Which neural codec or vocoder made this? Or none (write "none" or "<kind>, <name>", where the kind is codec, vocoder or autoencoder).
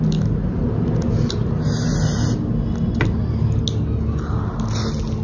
none